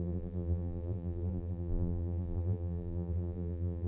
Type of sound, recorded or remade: remade